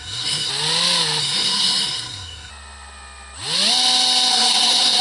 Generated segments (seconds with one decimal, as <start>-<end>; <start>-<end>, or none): 0.0-0.5; 1.2-2.5; 4.3-5.0